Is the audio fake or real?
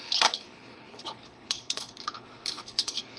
fake